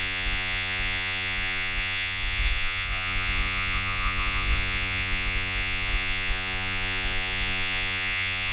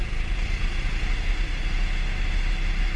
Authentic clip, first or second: second